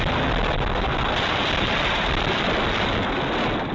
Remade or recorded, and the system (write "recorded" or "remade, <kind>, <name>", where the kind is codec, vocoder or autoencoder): recorded